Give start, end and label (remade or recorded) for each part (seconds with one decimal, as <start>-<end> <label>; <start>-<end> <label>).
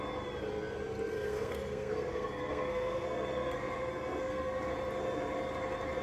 0.0-1.1 recorded; 1.1-4.7 remade; 4.7-6.0 recorded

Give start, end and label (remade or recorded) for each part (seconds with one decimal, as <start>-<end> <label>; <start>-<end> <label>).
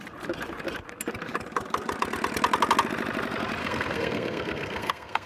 0.0-3.6 recorded; 3.6-5.3 remade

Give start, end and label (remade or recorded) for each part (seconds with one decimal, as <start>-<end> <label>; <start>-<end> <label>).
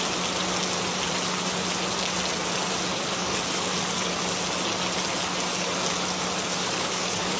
0.0-2.9 recorded; 2.9-4.1 remade; 4.1-6.6 recorded; 6.6-7.4 remade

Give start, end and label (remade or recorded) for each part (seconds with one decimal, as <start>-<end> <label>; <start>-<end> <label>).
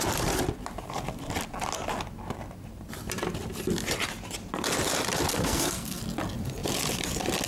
0.0-5.3 recorded; 5.3-6.0 remade; 6.0-7.5 recorded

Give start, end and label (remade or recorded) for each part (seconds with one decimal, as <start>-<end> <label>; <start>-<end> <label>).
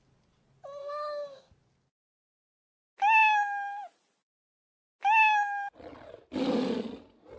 0.0-0.8 recorded; 0.8-1.5 remade; 1.5-7.4 recorded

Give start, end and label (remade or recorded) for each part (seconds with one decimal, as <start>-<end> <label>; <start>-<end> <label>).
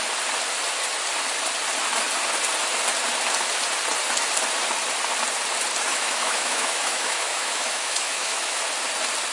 0.0-5.9 recorded; 5.9-8.6 remade; 8.6-9.3 recorded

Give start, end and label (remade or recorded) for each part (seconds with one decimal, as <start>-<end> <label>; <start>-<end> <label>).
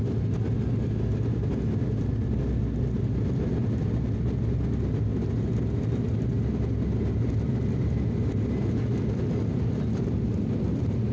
0.0-11.1 recorded